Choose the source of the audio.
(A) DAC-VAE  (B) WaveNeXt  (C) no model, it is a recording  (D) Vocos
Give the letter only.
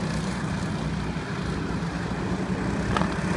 C